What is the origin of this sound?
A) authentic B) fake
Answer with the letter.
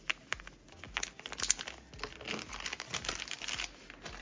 A